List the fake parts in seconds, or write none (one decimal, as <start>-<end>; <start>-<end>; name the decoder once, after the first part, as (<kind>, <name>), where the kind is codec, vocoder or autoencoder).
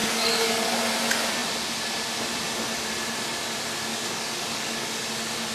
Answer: 0.0-0.8 (codec, DAC); 3.9-5.1